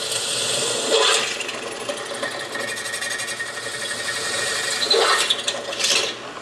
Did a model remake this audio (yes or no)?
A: no